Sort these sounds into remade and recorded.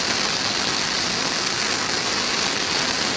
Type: recorded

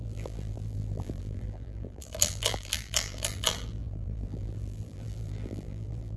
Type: remade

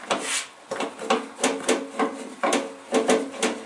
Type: recorded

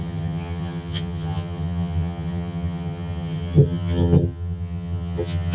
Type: remade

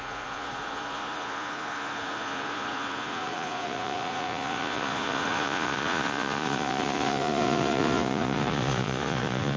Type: remade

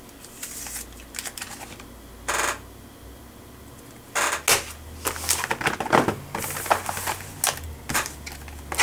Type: recorded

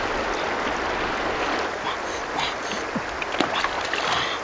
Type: recorded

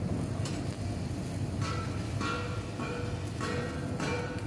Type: recorded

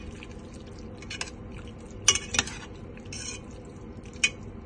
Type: recorded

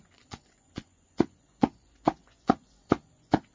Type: remade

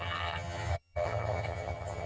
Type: remade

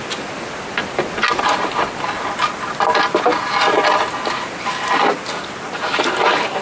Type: recorded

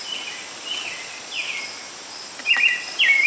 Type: recorded